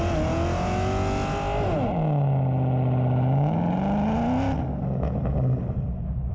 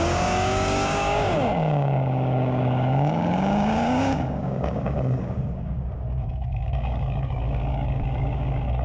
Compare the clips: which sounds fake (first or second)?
second